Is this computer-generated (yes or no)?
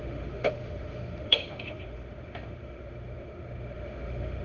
yes